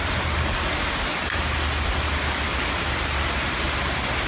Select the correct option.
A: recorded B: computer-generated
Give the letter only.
A